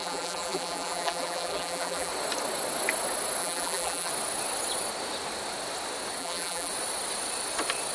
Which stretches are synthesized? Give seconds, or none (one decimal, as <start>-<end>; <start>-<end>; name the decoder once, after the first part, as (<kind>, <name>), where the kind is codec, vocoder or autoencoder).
0.0-2.1 (vocoder, BigVGAN v2); 3.4-4.1; 6.2-6.7